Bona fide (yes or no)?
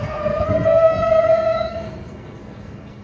no